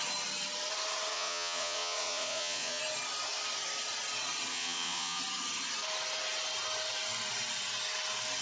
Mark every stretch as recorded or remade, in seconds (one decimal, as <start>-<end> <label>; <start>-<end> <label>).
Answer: 0.0-1.1 recorded; 1.1-2.8 remade; 2.8-4.5 recorded; 4.5-5.2 remade; 5.2-8.4 recorded